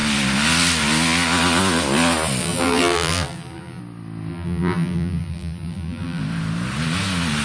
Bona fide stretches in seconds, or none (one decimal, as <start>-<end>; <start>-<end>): 0.0-2.4; 3.8-4.3; 6.2-7.4